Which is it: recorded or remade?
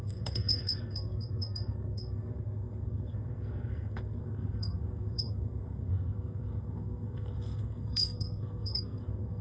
remade